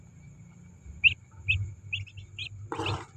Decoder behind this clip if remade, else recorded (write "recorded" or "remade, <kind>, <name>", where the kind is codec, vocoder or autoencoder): recorded